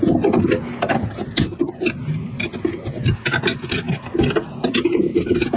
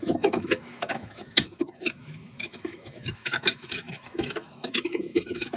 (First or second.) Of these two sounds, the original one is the first